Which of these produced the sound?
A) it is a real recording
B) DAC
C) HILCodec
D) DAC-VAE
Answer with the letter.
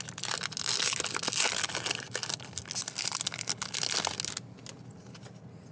A